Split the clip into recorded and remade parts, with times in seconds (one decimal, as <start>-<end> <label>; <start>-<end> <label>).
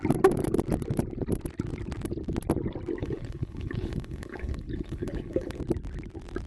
0.0-3.0 recorded; 3.0-5.6 remade; 5.6-6.5 recorded